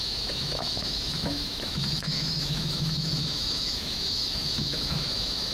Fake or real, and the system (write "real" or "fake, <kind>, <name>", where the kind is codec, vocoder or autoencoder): fake, autoencoder, DAC-VAE